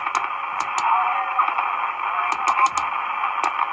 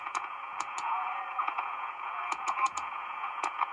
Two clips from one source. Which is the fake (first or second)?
second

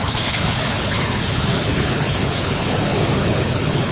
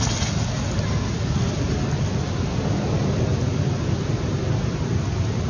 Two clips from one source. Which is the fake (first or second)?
first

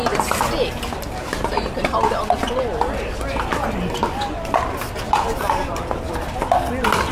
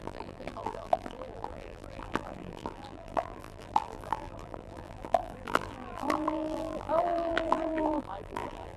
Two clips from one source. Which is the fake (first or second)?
second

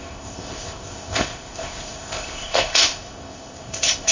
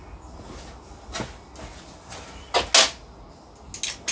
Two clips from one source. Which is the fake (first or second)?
first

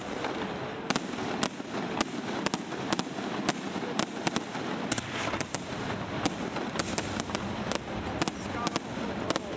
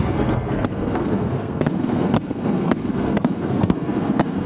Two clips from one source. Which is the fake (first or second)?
second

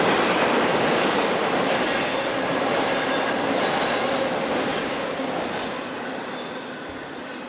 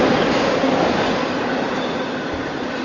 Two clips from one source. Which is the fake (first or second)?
second